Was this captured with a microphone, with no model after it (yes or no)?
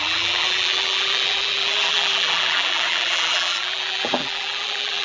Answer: no